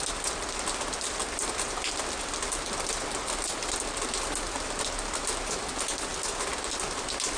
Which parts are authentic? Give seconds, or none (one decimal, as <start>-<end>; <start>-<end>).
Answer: 0.0-7.4